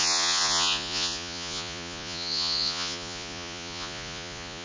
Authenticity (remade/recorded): remade